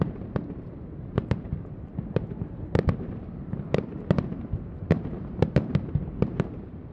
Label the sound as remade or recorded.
remade